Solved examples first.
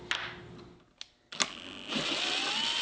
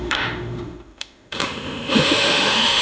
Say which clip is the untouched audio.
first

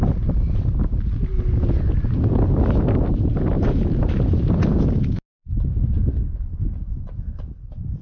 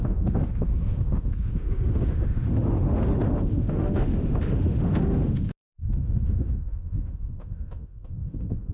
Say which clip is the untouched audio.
first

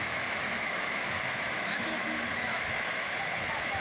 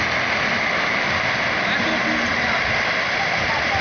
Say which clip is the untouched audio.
second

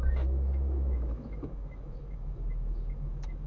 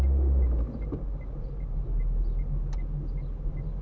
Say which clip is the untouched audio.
second